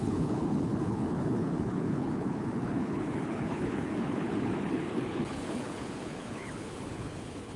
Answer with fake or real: fake